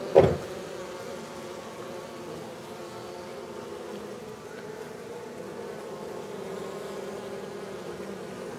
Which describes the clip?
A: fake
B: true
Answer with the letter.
B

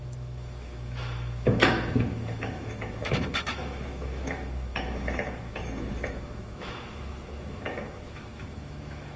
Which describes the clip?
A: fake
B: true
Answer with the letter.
A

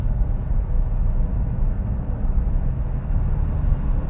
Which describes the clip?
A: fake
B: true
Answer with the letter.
B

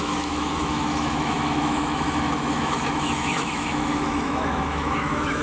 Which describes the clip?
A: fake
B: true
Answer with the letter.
A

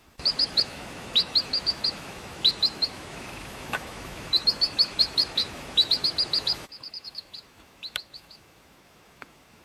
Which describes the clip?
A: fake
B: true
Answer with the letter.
A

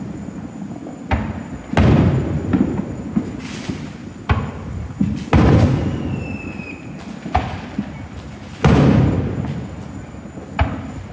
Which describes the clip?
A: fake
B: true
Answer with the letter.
B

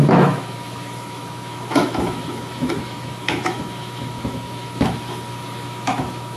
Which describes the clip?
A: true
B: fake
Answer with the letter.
B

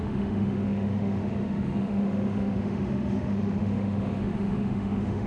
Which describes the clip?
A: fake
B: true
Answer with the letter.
A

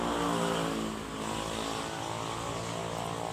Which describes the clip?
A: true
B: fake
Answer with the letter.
A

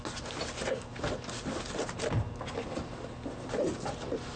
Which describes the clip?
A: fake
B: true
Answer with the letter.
B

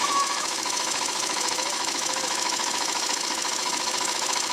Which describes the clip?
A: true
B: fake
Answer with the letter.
B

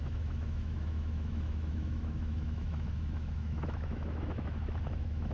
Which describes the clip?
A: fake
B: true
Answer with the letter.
A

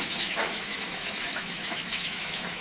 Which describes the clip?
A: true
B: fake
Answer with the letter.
B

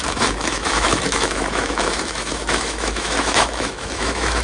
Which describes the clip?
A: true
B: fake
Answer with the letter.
B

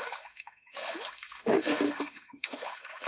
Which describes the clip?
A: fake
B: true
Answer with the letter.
A